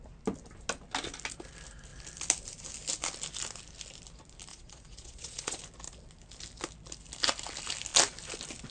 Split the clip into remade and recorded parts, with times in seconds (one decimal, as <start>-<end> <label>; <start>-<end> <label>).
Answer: 0.0-4.5 recorded; 4.5-5.6 remade; 5.6-8.7 recorded